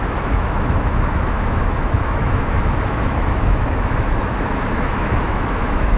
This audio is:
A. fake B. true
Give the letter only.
A